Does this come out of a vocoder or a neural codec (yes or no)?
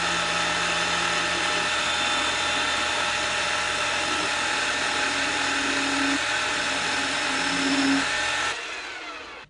no